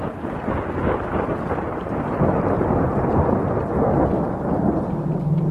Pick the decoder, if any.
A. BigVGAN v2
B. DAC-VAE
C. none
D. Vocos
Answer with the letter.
C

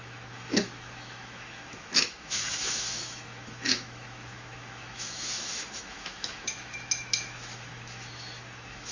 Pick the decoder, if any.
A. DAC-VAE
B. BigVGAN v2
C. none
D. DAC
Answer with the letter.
A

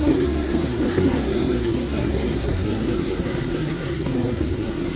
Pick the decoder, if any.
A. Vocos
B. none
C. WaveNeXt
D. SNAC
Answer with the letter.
D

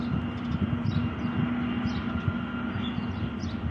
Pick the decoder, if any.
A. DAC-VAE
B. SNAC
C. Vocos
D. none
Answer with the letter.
D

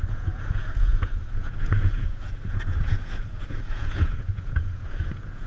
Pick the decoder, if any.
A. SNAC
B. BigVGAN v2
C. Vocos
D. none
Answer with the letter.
C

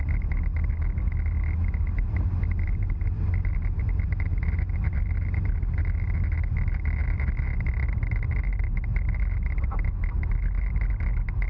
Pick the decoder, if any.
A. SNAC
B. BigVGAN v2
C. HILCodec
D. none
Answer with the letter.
D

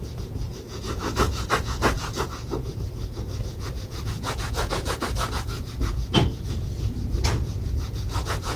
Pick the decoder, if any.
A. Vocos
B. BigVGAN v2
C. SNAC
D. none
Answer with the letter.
A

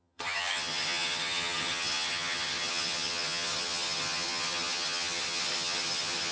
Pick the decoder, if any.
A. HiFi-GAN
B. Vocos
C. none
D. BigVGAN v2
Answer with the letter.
A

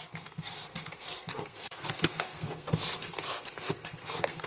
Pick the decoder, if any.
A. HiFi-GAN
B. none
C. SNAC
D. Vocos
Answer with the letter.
C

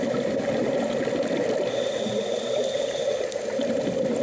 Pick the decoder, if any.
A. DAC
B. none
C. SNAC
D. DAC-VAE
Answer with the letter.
B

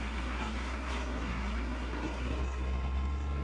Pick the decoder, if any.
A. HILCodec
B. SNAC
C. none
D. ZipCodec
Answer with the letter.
B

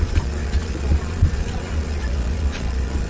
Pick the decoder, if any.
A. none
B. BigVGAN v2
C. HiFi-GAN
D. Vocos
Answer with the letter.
D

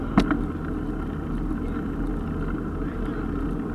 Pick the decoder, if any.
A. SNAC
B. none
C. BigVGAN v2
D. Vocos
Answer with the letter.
B